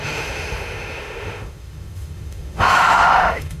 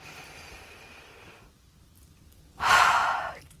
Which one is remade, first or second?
first